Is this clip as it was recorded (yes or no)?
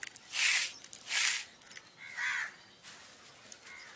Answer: yes